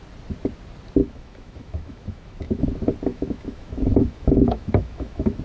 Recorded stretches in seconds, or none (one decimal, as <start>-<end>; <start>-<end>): 0.0-1.0; 2.6-3.1